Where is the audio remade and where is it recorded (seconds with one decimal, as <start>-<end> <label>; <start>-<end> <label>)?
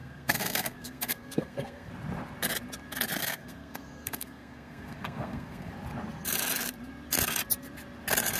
0.0-1.9 remade; 1.9-3.2 recorded; 3.2-5.7 remade; 5.7-8.4 recorded